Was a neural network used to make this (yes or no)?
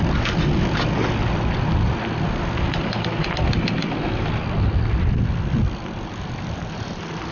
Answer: no